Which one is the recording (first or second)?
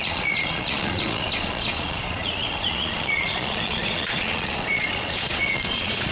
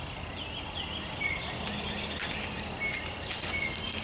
second